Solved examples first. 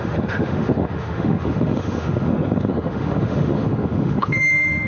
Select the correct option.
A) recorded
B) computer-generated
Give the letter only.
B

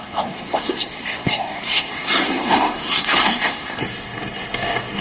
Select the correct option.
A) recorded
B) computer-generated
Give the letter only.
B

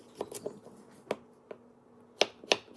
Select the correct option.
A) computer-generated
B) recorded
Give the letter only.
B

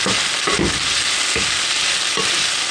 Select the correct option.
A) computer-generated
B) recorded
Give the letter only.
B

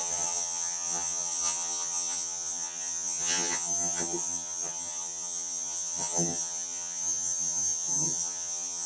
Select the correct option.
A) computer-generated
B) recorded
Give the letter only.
A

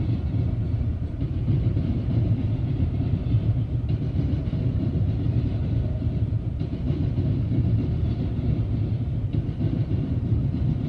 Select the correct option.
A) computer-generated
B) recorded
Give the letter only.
A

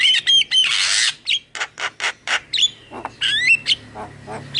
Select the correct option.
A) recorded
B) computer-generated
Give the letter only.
A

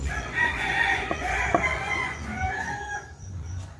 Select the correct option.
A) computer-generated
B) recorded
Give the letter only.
A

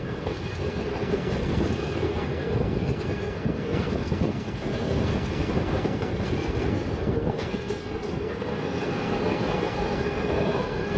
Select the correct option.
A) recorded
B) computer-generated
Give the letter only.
B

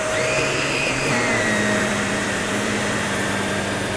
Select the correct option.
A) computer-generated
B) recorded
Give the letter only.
A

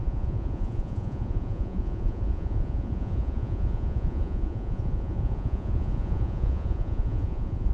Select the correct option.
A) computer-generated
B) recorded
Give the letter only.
A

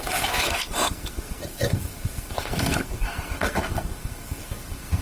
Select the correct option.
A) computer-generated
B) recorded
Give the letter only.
A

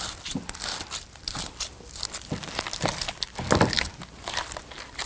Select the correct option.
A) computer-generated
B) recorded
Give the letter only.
B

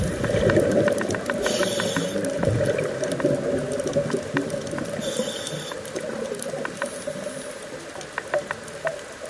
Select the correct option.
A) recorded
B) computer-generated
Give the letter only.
A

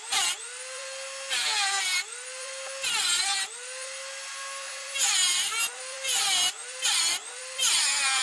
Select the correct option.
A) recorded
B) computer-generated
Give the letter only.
A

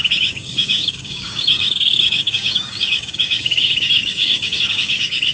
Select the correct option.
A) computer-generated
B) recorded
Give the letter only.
A